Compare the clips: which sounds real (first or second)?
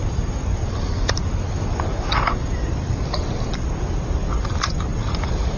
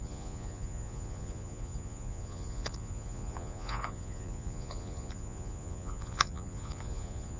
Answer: first